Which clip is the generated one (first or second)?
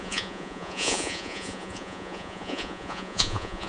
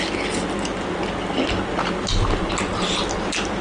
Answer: first